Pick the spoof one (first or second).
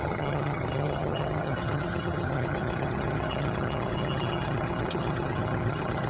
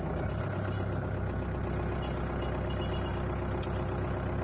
first